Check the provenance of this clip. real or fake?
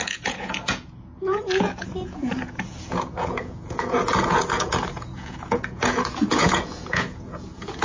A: fake